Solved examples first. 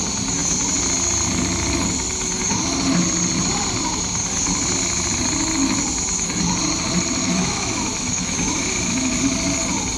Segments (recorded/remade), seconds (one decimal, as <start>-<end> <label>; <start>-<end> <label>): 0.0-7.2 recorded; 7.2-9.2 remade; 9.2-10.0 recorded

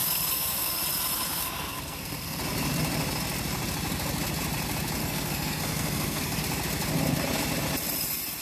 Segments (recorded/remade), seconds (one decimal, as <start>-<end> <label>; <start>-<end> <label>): 0.0-0.8 remade; 0.8-1.3 recorded; 1.3-2.4 remade; 2.4-5.0 recorded; 5.0-6.4 remade; 6.4-8.4 recorded

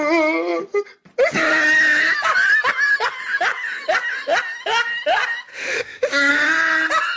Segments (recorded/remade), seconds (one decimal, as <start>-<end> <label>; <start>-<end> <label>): 0.0-5.5 recorded; 5.5-6.3 remade; 6.3-7.2 recorded

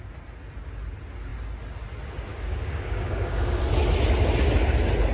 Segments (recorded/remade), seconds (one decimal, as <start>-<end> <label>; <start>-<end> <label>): 0.0-2.3 recorded; 2.3-3.6 remade; 3.6-5.1 recorded

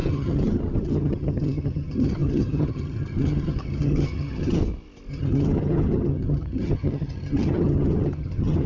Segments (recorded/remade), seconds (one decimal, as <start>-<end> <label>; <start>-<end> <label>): 0.0-4.6 remade; 4.6-5.1 recorded; 5.1-8.7 remade

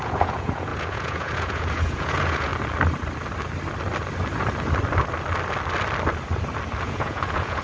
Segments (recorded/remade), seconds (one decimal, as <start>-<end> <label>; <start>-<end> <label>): 0.0-2.5 remade; 2.5-6.8 recorded; 6.8-7.6 remade

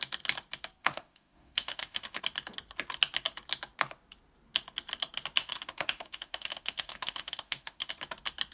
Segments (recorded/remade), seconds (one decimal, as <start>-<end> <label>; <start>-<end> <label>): 0.0-0.8 recorded; 0.8-2.2 remade; 2.2-5.4 recorded; 5.4-7.9 remade; 7.9-8.5 recorded